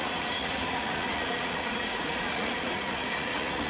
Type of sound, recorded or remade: remade